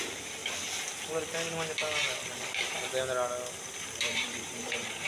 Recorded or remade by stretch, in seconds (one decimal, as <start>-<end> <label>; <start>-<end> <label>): 0.0-0.4 remade; 0.4-3.5 recorded; 3.5-5.1 remade